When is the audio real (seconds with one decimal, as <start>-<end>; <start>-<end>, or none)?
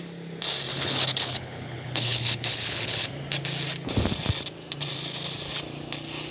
0.0-0.7; 3.1-6.3